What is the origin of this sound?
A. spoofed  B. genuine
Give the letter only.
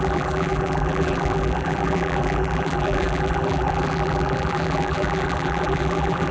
A